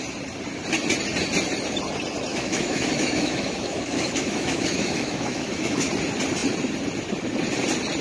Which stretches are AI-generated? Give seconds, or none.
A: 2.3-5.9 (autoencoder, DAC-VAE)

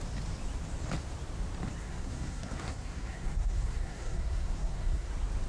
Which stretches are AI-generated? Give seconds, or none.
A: 1.8-5.1 (codec, SNAC)

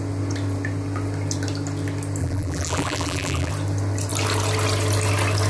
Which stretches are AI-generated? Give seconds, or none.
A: 2.2-3.5 (vocoder, BigVGAN v2)